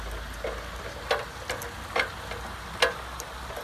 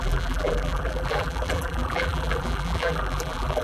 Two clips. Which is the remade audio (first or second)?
second